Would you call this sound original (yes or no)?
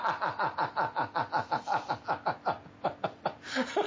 yes